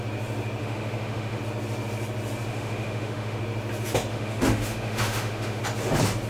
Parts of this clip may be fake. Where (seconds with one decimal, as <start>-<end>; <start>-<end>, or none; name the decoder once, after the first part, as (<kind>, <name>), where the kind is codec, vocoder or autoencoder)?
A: 0.6-1.4 (autoencoder, DAC-VAE); 2.5-3.4; 4.1-5.6